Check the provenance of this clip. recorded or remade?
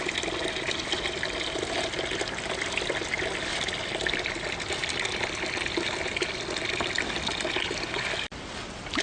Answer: recorded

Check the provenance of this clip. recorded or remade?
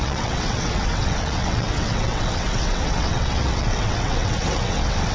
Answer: remade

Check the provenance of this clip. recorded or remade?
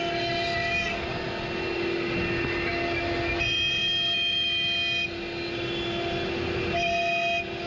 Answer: recorded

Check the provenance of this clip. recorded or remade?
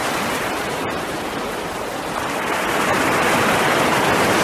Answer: recorded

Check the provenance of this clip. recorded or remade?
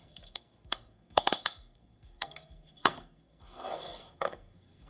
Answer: remade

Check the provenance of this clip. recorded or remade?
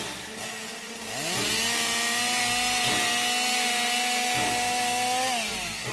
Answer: recorded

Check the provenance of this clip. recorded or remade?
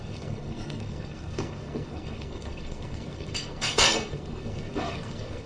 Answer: remade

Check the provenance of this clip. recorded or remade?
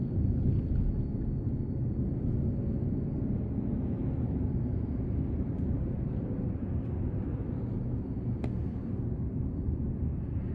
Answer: recorded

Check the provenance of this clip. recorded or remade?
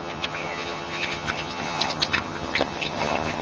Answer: remade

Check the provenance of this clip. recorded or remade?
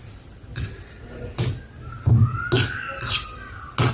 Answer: recorded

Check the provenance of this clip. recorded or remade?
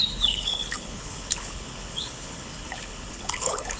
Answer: remade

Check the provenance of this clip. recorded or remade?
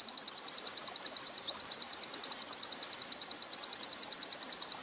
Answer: recorded